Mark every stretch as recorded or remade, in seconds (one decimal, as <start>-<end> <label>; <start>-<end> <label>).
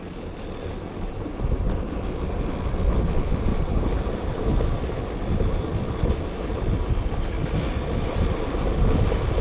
0.0-9.4 recorded